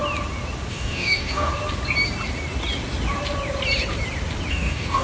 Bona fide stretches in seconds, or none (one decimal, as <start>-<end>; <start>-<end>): 0.0-0.7; 1.5-4.5